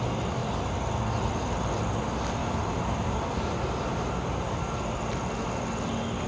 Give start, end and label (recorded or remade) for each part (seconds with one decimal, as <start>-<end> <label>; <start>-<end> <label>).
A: 0.0-2.4 recorded; 2.4-5.1 remade; 5.1-6.3 recorded